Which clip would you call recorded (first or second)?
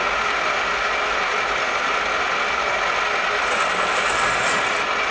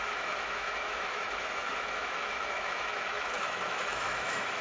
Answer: first